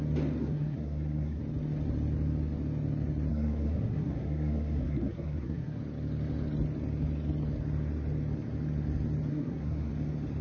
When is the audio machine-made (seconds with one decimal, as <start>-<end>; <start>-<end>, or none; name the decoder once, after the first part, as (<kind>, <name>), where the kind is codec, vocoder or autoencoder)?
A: 0.4-1.4 (codec, SNAC); 3.3-5.8; 9.3-9.9